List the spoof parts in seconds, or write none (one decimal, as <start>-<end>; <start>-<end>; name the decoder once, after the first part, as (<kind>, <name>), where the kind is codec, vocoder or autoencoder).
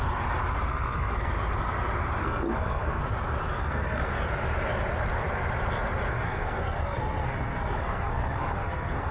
0.7-1.3 (codec, SNAC); 2.2-3.0; 3.5-4.1; 6.1-9.1